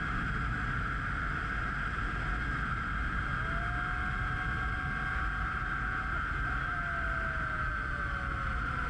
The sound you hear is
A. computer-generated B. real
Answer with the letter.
B